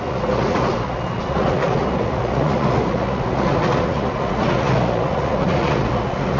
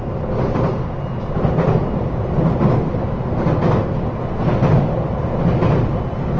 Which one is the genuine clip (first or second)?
second